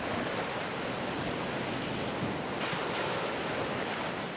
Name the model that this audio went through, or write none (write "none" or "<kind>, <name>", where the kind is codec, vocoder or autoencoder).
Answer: none